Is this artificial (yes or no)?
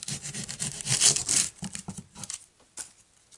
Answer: no